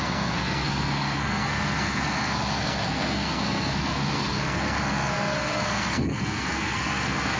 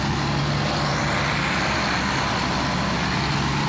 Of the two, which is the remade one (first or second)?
first